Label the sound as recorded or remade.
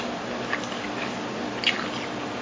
recorded